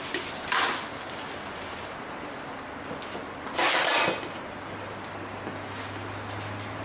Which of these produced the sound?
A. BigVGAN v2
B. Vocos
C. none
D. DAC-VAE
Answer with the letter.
C